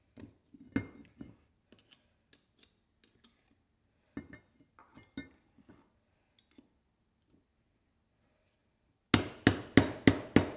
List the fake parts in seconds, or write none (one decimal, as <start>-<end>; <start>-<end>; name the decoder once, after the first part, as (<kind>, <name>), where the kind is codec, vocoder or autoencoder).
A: none